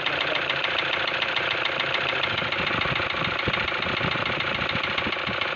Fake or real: real